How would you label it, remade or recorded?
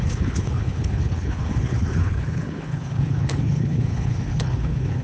remade